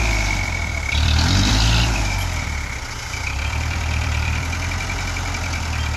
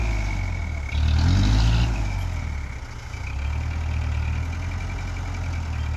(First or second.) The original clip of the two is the second